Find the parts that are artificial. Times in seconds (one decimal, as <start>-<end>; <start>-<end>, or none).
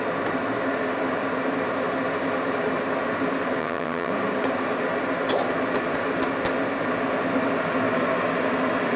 3.6-4.1